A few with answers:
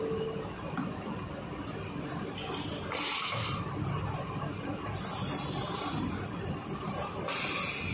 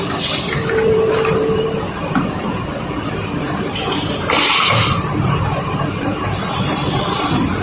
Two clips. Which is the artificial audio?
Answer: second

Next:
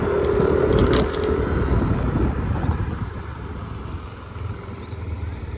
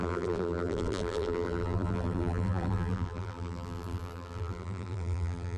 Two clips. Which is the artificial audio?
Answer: second